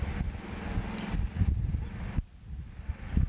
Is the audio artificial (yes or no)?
no